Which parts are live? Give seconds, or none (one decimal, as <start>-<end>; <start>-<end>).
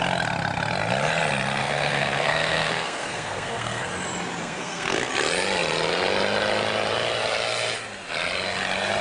0.0-1.6; 3.9-4.4; 5.1-9.0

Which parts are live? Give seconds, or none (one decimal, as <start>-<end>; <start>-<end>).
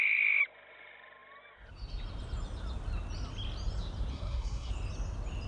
0.0-4.1; 4.7-5.5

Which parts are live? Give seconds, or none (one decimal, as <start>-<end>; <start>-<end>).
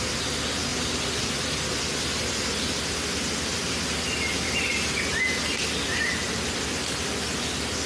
0.0-7.9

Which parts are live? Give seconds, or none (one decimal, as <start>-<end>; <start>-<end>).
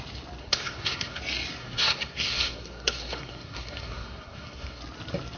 0.0-0.4; 1.2-1.6; 4.8-5.4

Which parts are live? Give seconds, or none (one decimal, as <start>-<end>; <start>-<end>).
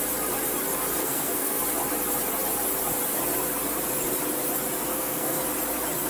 0.0-1.0; 1.6-4.9; 5.4-6.1